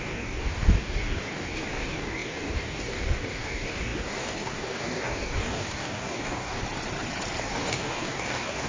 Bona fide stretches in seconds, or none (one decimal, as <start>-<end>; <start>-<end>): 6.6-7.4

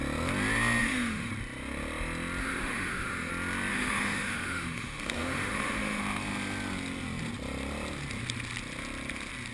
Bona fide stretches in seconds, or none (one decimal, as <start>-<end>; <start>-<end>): 0.0-0.8; 1.3-2.4; 3.3-3.7; 6.0-9.5

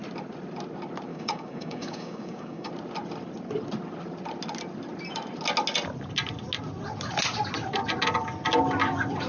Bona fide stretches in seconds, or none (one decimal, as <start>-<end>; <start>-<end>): 0.0-1.1; 2.7-9.3

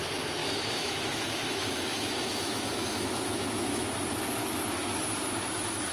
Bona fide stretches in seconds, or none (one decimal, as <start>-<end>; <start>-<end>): 0.0-0.4; 3.9-4.4; 5.0-5.9

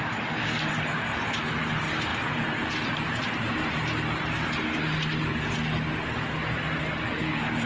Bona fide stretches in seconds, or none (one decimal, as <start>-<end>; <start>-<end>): 0.0-2.1; 3.3-7.7